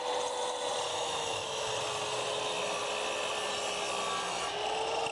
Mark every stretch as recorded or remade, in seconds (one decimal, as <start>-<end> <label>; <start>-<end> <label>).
0.0-0.9 recorded; 0.9-1.7 remade; 1.7-5.1 recorded